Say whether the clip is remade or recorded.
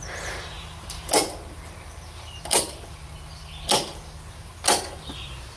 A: recorded